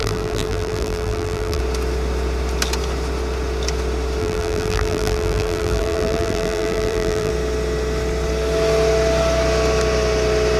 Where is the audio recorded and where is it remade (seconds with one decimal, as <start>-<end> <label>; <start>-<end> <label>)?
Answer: 0.0-1.6 remade; 1.6-4.2 recorded; 4.2-7.3 remade; 7.3-10.6 recorded